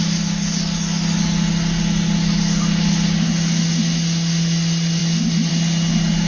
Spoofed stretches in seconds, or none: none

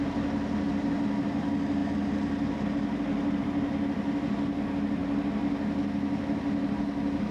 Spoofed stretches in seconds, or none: none

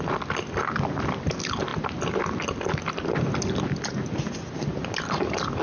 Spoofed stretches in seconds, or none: none

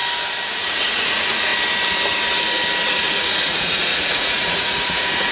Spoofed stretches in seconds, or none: 0.5-1.5 (vocoder, Vocos); 2.9-5.3